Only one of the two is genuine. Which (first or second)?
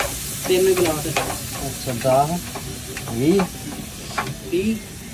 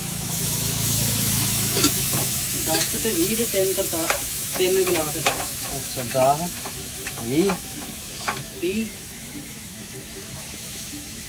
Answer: first